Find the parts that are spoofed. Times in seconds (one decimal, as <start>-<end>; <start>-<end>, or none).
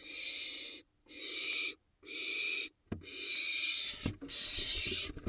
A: none